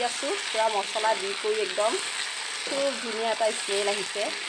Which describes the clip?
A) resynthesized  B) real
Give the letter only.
B